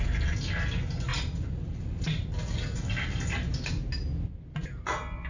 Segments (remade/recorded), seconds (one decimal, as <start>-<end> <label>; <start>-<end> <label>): 0.0-1.1 recorded; 1.1-3.2 remade; 3.2-5.3 recorded